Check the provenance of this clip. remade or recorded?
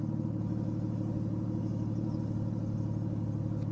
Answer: recorded